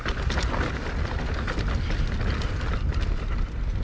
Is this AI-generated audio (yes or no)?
no